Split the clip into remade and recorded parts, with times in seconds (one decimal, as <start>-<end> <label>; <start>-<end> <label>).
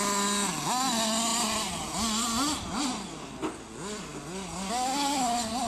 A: 0.0-5.7 recorded